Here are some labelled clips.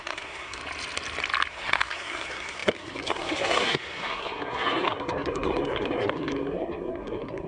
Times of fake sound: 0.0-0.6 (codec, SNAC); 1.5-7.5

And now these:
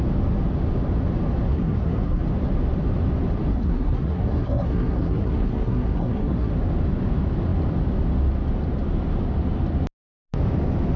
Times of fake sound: 1.5-2.2 (codec, SNAC); 3.5-6.5

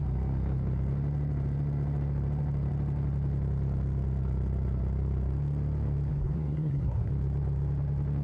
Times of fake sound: 6.1-7.1 (codec, SNAC)

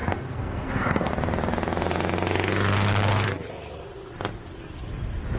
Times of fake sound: 0.0-1.1 (codec, SNAC)

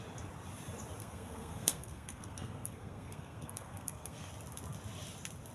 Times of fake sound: 1.0-4.3 (codec, SNAC)

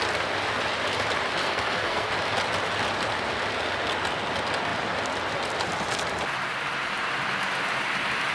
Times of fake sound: 1.4-2.1 (codec, SNAC)

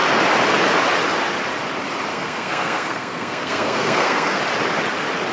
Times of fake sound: 2.1-4.4 (codec, SNAC)

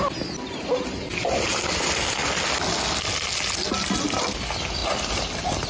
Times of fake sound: none